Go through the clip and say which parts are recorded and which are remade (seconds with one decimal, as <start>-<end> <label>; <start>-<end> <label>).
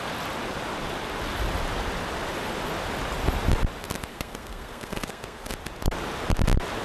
0.0-4.1 recorded; 4.1-5.5 remade; 5.5-6.8 recorded